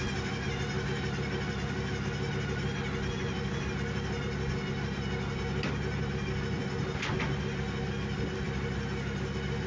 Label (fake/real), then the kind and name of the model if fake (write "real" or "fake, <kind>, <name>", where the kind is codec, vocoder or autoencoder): real